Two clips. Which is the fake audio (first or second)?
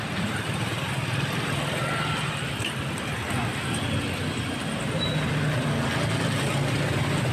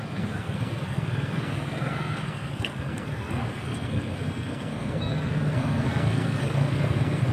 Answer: second